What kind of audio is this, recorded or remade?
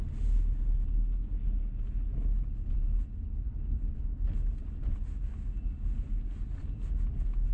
recorded